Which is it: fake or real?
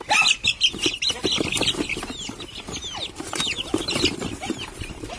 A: real